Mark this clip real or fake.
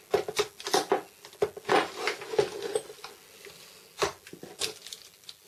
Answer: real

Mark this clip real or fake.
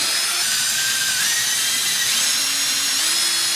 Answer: real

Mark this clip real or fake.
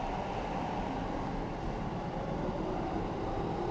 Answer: real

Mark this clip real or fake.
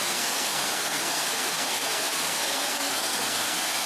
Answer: fake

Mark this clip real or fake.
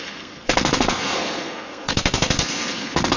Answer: fake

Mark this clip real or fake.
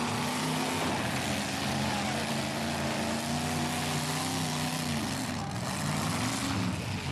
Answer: real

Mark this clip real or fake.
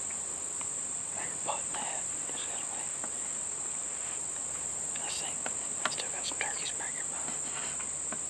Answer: real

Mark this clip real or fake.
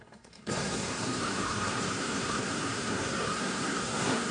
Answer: fake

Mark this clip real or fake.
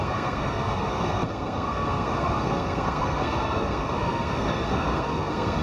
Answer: fake